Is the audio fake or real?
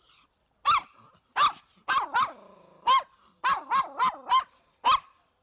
real